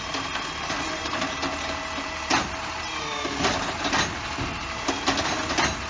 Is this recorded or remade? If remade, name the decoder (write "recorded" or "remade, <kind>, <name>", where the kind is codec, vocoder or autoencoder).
recorded